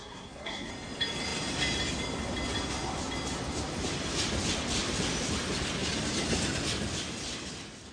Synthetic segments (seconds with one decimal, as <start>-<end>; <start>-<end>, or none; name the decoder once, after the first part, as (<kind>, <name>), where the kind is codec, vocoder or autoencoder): 0.0-0.7 (codec, SNAC)